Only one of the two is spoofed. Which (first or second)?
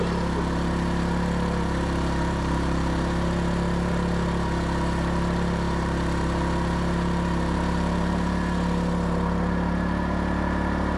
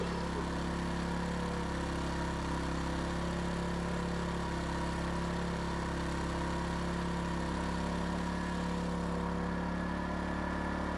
first